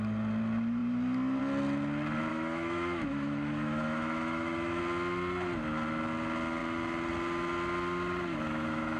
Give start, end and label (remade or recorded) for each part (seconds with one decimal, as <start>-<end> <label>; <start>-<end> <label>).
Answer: 0.0-2.3 recorded; 2.3-4.8 remade; 4.8-8.3 recorded; 8.3-9.0 remade